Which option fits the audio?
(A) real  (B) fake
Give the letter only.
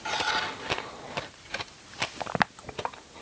A